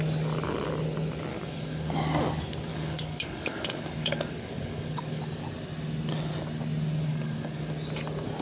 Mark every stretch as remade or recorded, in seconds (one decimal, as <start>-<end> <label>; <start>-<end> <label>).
0.0-1.3 recorded; 1.3-1.9 remade; 1.9-2.7 recorded; 2.7-5.4 remade; 5.4-7.1 recorded; 7.1-7.7 remade; 7.7-8.4 recorded